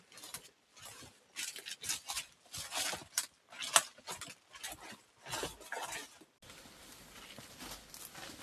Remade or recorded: recorded